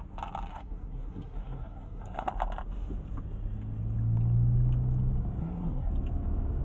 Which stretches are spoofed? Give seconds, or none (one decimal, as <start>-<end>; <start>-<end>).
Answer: 0.5-2.3; 5.4-5.9